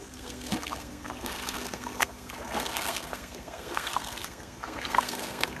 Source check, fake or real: fake